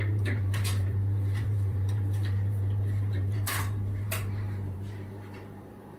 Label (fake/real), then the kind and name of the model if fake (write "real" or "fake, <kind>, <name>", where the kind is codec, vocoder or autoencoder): fake, vocoder, BigVGAN v2